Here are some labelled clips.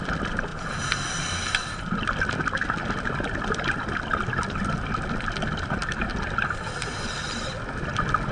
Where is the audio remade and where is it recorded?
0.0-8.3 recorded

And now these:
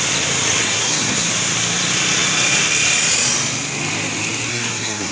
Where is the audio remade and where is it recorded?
0.0-0.6 recorded; 0.6-1.3 remade; 1.3-4.5 recorded; 4.5-5.1 remade

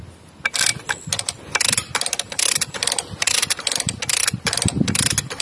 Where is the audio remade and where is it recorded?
0.0-5.4 recorded

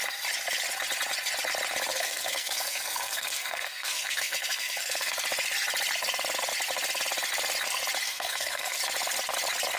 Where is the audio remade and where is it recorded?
0.0-1.9 recorded; 1.9-5.1 remade; 5.1-8.1 recorded; 8.1-8.8 remade; 8.8-9.8 recorded

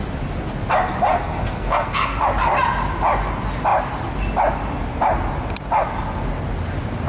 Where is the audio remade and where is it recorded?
0.0-1.1 recorded; 1.1-2.2 remade; 2.2-7.1 recorded

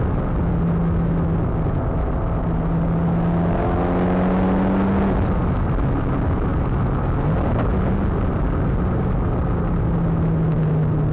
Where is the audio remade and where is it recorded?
0.0-11.1 recorded

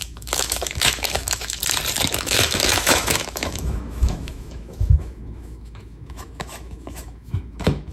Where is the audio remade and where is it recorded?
0.0-1.6 remade; 1.6-2.1 recorded; 2.1-7.9 remade

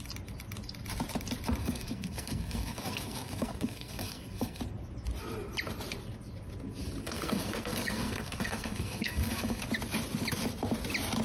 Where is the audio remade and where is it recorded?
0.0-1.6 recorded; 1.6-4.6 remade; 4.6-7.0 recorded; 7.0-9.6 remade; 9.6-11.2 recorded